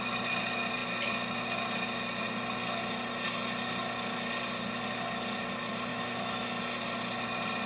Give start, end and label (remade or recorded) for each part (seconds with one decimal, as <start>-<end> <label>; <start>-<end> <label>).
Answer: 0.0-5.9 recorded; 5.9-6.6 remade; 6.6-7.7 recorded